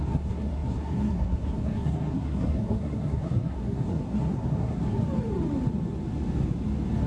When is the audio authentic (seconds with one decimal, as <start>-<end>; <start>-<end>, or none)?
5.0-7.1